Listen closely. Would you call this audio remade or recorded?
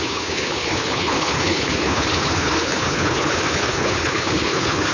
remade